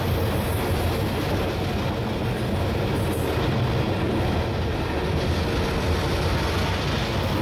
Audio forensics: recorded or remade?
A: recorded